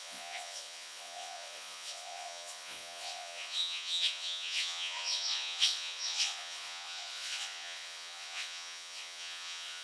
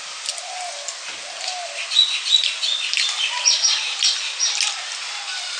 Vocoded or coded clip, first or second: first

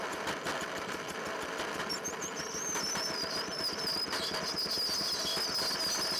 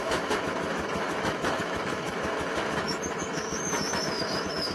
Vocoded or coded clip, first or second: second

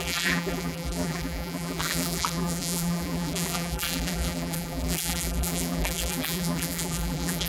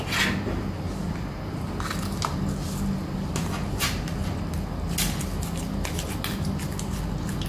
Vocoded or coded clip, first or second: first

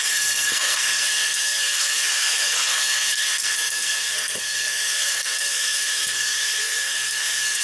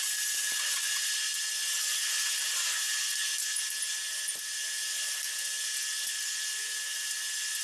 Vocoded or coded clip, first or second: first